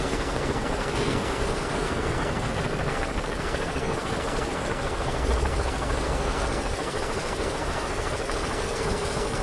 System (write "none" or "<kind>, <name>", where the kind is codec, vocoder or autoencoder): codec, SNAC